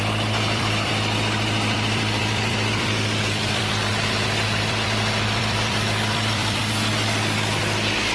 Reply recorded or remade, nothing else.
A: remade